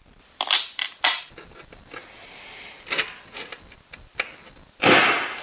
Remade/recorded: recorded